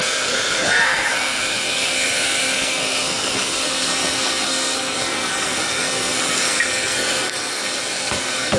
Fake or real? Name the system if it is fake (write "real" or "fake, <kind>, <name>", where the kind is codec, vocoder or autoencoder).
fake, codec, SNAC